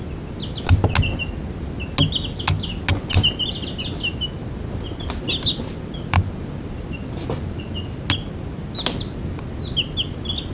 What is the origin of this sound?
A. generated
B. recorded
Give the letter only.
B